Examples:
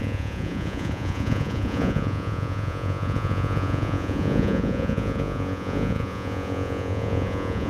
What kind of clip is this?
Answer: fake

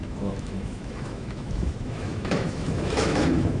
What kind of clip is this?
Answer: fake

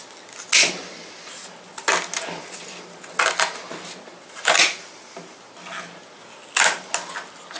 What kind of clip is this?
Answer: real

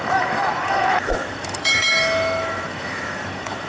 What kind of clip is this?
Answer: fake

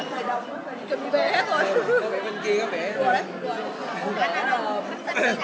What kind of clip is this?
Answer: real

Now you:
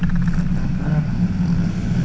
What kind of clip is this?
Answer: real